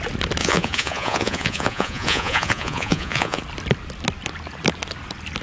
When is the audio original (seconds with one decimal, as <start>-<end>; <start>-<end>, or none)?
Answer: 0.0-0.4; 3.4-5.4